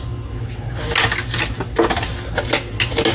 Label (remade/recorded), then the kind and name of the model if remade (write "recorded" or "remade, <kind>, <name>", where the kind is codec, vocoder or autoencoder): recorded